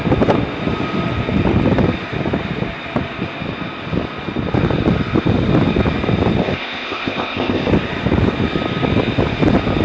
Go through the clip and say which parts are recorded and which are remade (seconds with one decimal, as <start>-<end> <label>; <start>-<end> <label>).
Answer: 0.0-6.4 recorded; 6.4-7.7 remade; 7.7-9.8 recorded